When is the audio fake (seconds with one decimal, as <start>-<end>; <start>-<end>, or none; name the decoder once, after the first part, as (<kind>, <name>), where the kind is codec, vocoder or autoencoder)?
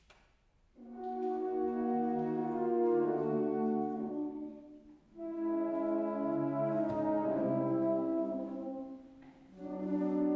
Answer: none